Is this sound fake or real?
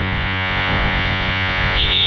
fake